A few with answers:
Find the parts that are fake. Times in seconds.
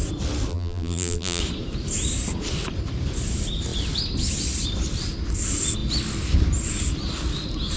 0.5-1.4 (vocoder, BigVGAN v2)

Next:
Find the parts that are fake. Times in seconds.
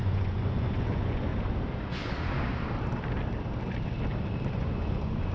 0.0-1.3 (vocoder, Vocos); 4.5-5.3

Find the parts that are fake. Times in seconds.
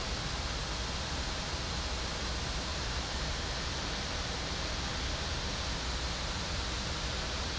2.7-4.8 (vocoder, BigVGAN v2)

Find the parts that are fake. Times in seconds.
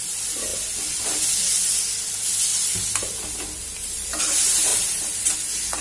2.5-4.2 (vocoder, BigVGAN v2); 4.7-5.3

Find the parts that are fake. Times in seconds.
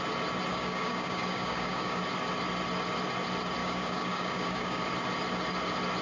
0.5-2.0 (codec, DAC); 3.6-4.8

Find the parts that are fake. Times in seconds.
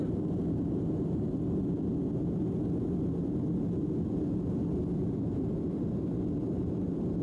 none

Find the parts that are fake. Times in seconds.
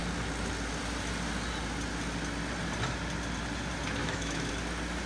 4.0-4.5 (autoencoder, DAC-VAE)